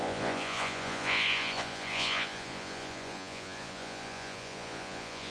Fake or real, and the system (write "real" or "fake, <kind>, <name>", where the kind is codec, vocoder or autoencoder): fake, vocoder, Vocos